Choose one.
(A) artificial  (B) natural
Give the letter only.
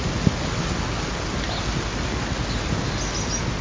B